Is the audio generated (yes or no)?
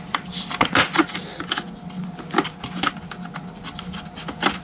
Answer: no